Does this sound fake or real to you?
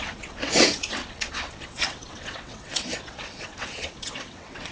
fake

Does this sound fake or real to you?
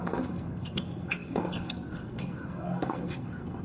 fake